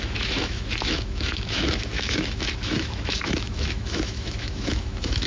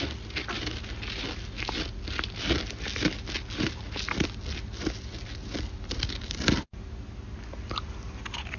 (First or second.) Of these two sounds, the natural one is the second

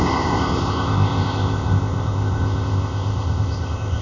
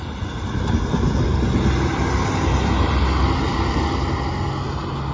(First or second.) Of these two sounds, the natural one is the second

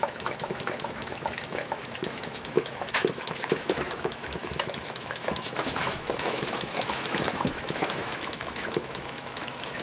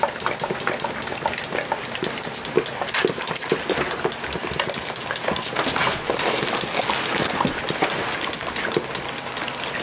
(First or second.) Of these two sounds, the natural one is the second